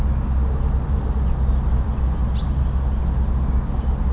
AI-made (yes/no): no